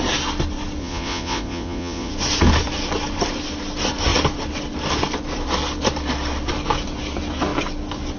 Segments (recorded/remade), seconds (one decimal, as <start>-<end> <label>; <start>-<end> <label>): 0.0-0.8 recorded; 0.8-2.1 remade; 2.1-8.2 recorded